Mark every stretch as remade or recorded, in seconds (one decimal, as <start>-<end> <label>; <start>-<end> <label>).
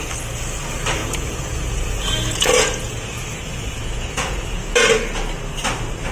0.0-1.0 recorded; 1.0-4.7 remade; 4.7-6.1 recorded